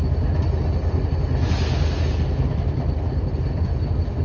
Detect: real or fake real